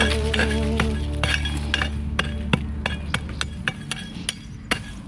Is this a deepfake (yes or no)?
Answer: no